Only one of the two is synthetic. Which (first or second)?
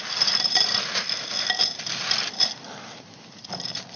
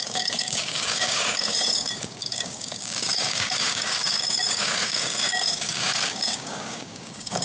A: second